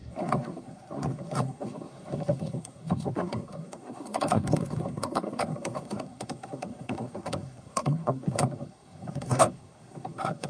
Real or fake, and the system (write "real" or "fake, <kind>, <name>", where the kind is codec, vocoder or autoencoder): fake, codec, SNAC